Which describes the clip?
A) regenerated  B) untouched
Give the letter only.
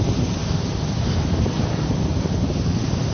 B